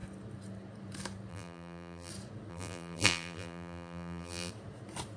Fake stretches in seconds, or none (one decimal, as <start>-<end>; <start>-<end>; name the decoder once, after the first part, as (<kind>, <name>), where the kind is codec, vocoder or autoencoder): 1.3-2.1 (vocoder, BigVGAN v2); 2.5-4.5